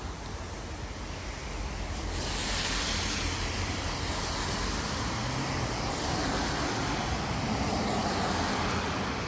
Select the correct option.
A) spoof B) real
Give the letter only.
B